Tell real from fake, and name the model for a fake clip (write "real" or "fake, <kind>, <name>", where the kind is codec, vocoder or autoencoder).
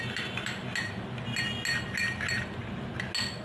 real